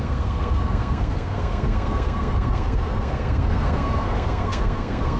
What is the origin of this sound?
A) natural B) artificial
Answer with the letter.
B